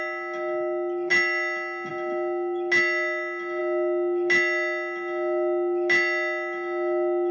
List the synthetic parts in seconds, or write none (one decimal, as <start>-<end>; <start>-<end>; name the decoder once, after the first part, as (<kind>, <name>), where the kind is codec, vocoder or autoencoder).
none